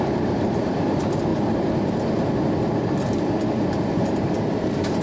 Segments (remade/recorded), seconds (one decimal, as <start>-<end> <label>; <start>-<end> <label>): 0.0-1.3 remade; 1.3-3.6 recorded; 3.6-5.0 remade